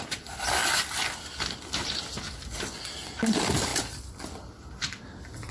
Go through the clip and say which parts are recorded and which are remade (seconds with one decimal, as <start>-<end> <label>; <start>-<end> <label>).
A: 0.0-5.5 recorded